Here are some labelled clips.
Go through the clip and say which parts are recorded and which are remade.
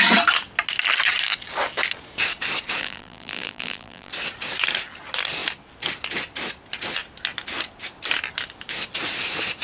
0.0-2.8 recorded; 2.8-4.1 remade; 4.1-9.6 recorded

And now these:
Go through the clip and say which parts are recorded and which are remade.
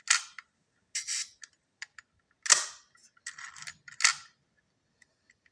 0.0-5.5 recorded